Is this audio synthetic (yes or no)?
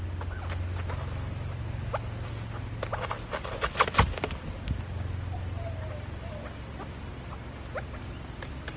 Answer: no